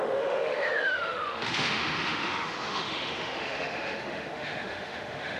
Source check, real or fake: fake